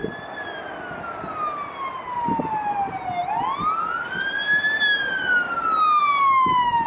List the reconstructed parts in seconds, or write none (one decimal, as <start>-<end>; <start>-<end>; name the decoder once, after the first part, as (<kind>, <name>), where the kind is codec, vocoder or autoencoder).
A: none